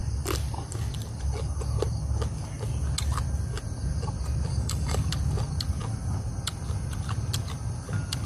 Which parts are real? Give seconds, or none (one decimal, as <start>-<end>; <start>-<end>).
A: 0.0-4.5; 5.1-8.3